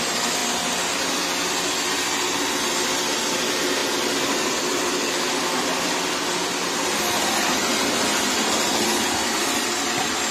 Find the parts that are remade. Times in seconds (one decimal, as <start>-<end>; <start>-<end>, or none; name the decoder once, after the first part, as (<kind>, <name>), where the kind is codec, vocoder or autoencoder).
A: none